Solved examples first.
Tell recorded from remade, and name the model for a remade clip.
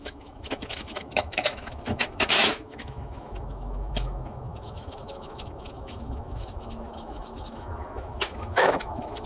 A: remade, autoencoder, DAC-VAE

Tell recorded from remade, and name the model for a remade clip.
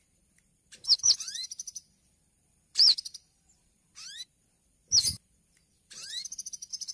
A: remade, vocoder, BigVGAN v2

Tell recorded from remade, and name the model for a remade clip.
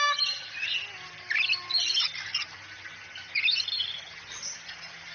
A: recorded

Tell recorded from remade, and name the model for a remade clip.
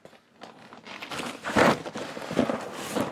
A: recorded